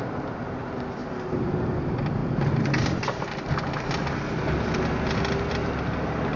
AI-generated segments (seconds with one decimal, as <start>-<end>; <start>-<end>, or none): 0.0-2.2; 5.5-6.4